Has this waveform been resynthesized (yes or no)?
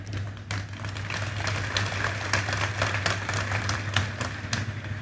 yes